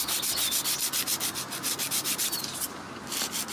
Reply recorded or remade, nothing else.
recorded